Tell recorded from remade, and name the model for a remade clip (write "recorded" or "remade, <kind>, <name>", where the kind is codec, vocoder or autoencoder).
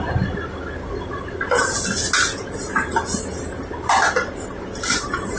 recorded